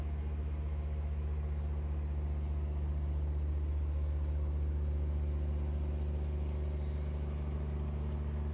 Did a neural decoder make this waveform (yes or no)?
no